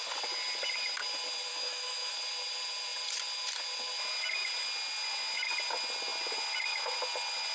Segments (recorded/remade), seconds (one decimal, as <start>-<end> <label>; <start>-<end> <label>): 0.0-1.5 recorded; 1.5-2.1 remade; 2.1-7.5 recorded

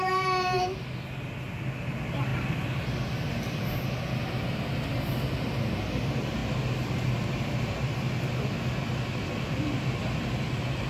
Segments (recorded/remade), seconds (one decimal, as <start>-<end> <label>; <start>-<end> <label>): 0.0-10.9 recorded

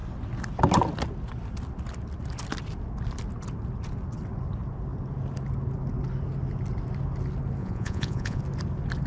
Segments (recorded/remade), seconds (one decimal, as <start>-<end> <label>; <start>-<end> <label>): 0.0-7.6 recorded; 7.6-8.4 remade; 8.4-9.1 recorded

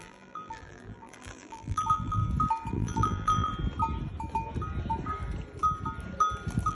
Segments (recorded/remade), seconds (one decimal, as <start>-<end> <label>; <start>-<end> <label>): 0.0-2.2 remade; 2.2-2.7 recorded; 2.7-3.5 remade; 3.5-6.7 recorded